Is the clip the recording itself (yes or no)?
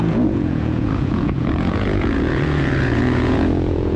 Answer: no